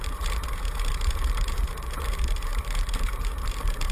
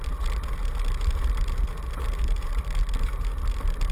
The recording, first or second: second